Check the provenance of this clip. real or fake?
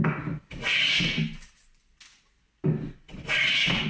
real